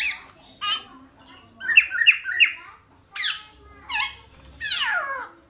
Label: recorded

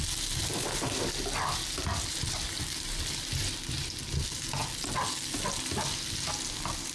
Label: recorded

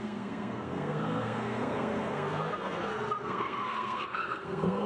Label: remade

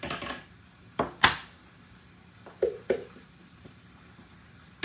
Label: recorded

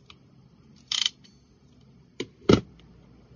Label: recorded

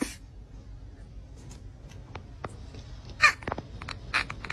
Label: recorded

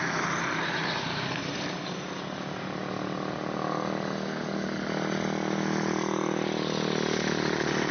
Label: recorded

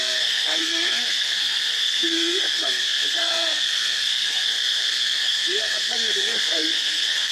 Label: remade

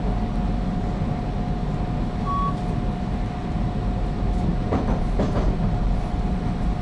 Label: recorded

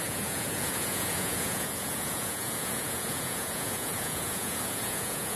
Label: remade